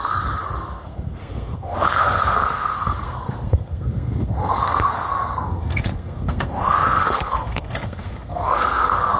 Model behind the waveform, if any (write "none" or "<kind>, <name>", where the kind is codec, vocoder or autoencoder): codec, SNAC